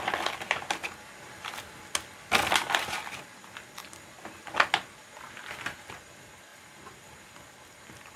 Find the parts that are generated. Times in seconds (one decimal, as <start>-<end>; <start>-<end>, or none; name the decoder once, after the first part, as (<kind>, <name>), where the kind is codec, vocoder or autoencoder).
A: none